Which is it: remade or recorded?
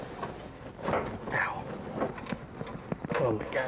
recorded